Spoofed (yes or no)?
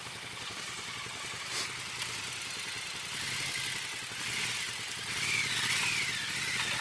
no